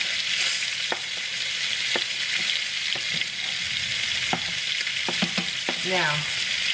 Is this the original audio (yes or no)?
yes